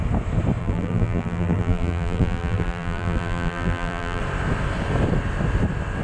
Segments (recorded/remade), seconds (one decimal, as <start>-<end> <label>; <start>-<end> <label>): 0.0-0.6 recorded; 0.6-4.2 remade; 4.2-6.0 recorded